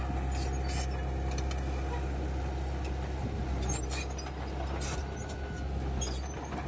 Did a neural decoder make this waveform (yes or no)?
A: no